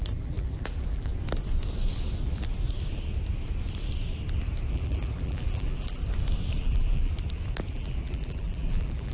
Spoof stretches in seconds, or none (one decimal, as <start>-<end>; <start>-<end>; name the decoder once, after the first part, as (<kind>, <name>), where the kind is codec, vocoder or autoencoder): 0.0-1.1 (vocoder, BigVGAN v2); 4.7-6.0; 6.6-7.1; 7.7-9.1